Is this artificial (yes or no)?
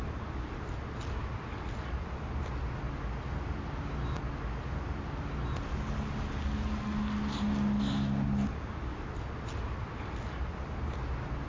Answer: no